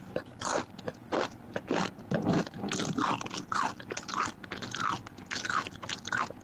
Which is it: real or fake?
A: real